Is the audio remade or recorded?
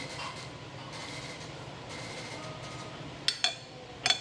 recorded